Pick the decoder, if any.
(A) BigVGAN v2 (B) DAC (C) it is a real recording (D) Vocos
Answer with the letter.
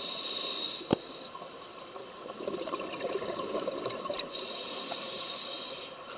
C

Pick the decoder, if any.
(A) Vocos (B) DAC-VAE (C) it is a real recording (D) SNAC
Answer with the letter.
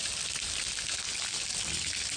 C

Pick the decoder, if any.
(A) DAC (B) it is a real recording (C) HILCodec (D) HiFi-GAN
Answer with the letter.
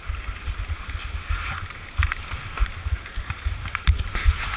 B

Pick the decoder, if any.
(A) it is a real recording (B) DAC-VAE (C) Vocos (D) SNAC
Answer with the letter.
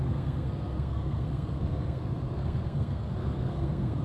D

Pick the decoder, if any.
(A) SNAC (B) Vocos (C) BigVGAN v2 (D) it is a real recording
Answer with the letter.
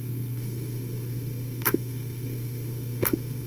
A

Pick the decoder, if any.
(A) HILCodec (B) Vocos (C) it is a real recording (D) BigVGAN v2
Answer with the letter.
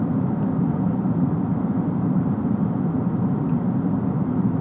D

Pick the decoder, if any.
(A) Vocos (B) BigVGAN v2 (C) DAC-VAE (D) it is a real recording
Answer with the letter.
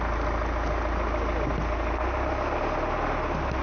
D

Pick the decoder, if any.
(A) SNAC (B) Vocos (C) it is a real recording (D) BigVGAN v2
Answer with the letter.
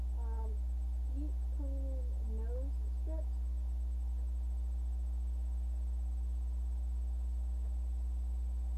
C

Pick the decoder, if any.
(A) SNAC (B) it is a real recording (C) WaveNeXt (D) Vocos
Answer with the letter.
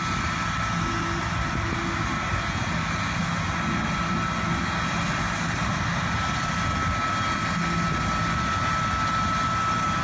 B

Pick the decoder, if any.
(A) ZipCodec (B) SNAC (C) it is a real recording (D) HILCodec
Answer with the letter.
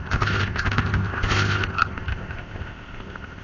A